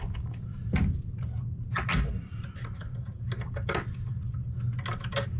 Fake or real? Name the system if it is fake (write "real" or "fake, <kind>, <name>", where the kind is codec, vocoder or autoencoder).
real